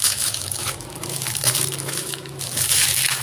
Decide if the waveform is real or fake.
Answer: fake